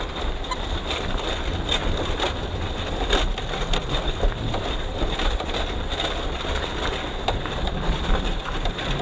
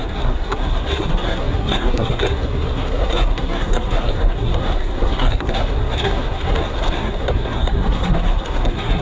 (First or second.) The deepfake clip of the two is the second